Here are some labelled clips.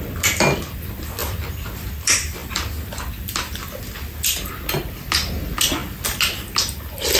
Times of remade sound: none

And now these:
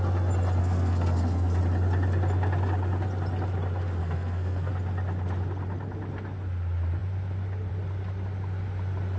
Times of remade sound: 0.6-1.6 (codec, SNAC); 4.0-4.7

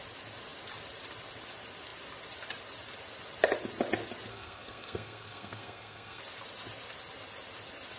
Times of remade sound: 4.3-6.2 (codec, SNAC)

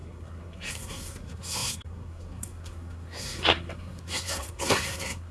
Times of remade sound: 0.0-5.3 (codec, SNAC)

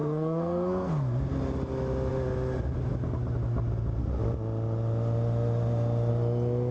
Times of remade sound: 0.0-0.9 (codec, SNAC)

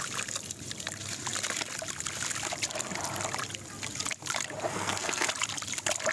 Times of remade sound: 4.7-5.3 (codec, SNAC)

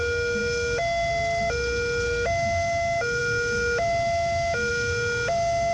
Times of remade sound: none